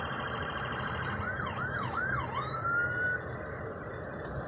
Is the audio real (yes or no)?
no